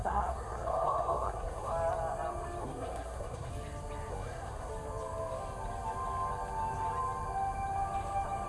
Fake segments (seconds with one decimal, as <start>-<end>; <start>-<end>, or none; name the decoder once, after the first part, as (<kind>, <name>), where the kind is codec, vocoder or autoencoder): 0.0-1.7 (codec, SNAC); 2.6-3.5; 4.1-4.7